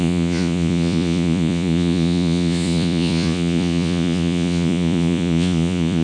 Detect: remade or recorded remade